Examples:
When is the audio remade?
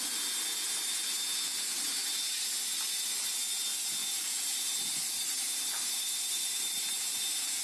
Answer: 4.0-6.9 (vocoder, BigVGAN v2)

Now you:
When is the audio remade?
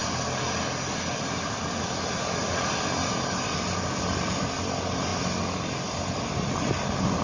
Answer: none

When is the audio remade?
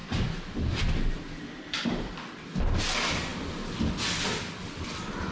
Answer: none